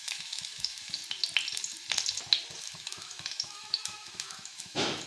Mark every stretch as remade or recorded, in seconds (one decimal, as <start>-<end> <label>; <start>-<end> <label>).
0.0-1.0 remade; 1.0-2.6 recorded; 2.6-5.1 remade